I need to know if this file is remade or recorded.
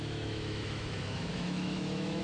remade